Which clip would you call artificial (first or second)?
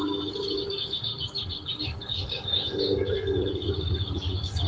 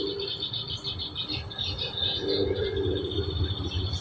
first